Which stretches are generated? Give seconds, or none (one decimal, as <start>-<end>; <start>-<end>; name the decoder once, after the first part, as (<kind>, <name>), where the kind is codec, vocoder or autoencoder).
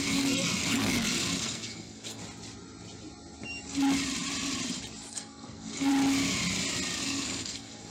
0.0-2.2 (codec, SNAC); 5.1-5.9; 7.0-7.9